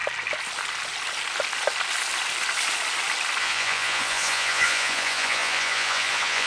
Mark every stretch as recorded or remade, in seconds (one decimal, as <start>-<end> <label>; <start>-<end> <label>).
0.0-3.4 recorded; 3.4-6.5 remade